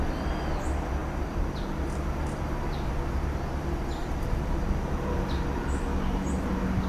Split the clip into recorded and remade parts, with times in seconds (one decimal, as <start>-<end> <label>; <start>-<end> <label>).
0.0-1.0 recorded; 1.0-1.8 remade; 1.8-4.0 recorded; 4.0-5.4 remade; 5.4-6.9 recorded